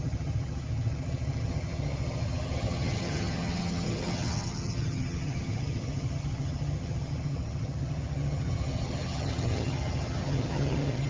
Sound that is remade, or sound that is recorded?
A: remade